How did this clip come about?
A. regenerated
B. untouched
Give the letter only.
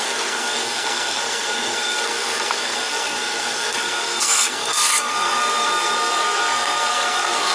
A